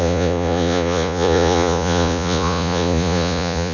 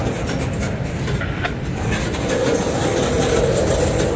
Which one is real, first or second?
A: second